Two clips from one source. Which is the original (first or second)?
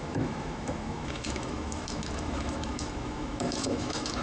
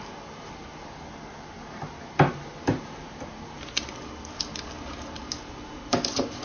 second